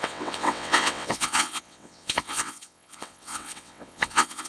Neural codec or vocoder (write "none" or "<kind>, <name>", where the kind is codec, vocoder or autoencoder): vocoder, WaveNeXt